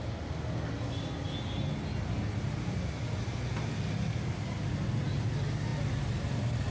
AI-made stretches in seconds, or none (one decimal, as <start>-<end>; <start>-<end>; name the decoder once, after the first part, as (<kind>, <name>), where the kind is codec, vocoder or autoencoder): none